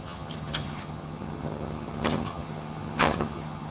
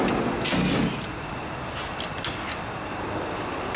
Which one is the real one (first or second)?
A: second